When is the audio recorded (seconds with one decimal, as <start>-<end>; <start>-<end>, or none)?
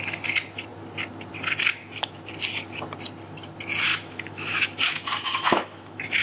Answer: 0.0-1.8; 2.3-3.9